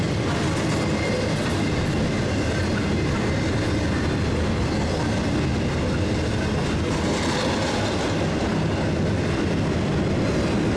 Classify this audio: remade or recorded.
recorded